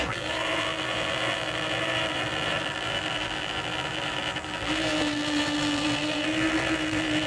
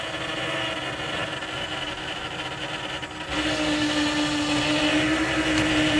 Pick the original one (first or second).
second